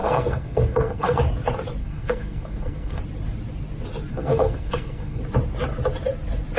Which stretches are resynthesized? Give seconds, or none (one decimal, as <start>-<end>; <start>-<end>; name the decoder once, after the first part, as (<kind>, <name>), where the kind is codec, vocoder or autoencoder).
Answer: 0.0-1.2 (codec, SNAC); 1.8-3.0; 4.1-5.2